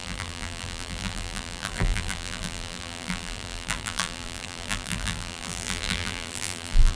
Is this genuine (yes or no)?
no